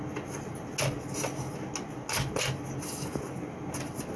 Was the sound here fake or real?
real